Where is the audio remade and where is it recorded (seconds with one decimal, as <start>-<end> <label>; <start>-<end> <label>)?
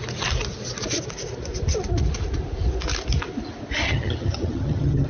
0.0-3.8 recorded; 3.8-5.1 remade